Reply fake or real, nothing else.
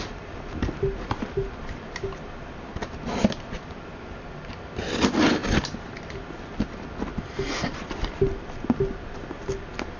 real